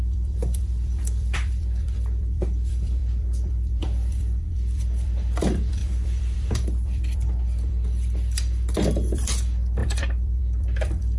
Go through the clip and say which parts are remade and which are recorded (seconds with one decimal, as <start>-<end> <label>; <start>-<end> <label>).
0.0-11.2 remade